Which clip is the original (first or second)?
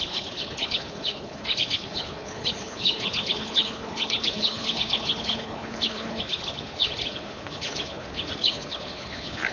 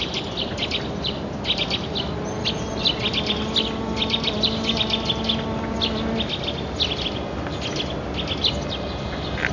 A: second